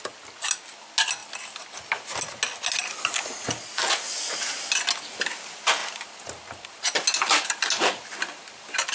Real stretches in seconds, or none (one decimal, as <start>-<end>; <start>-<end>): 0.0-8.9